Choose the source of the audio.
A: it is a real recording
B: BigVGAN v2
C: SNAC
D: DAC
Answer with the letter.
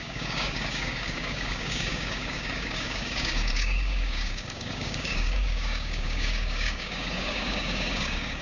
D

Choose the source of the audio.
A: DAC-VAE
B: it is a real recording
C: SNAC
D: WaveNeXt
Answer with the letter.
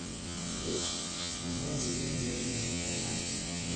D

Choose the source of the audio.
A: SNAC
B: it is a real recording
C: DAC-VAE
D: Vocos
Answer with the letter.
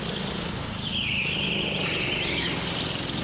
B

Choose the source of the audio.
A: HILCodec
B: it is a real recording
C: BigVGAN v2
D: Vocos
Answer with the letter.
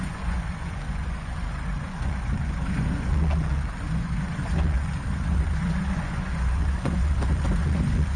D